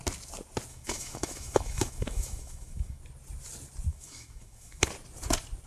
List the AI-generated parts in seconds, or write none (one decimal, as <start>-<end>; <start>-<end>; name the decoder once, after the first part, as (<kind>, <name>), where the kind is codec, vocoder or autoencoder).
0.7-3.0 (autoencoder, DAC-VAE); 3.9-4.8